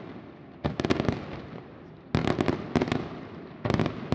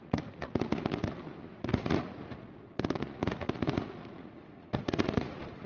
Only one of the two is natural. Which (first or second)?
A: first